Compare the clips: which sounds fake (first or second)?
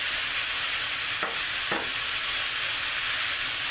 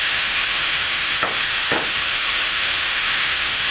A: second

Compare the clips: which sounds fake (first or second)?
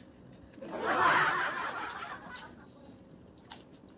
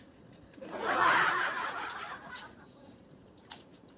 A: second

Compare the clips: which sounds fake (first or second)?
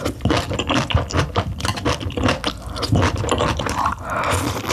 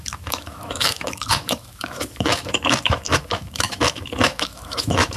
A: second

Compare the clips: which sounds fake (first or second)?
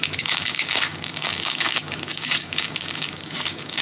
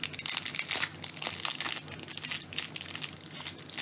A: first